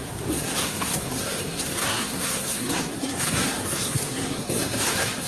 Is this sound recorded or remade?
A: remade